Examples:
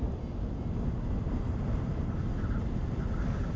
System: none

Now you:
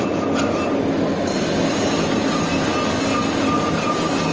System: none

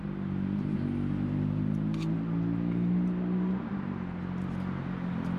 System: none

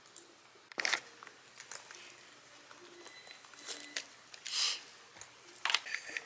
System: none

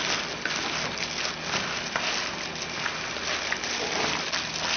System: none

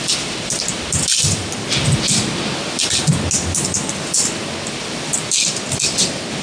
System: none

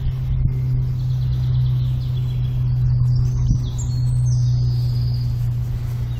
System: none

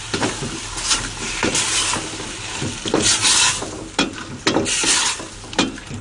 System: none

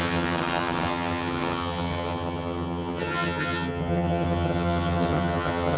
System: vocoder, HiFi-GAN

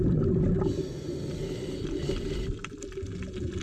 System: none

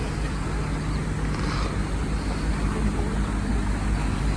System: none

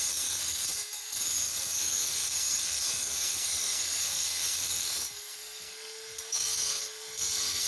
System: codec, SNAC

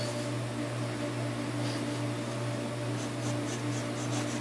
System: none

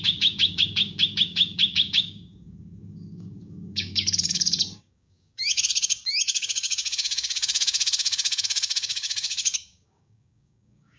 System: codec, DAC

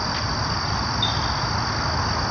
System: none